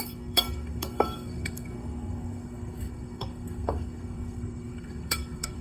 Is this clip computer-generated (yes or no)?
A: yes